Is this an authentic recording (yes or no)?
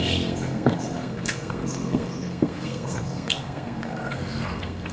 no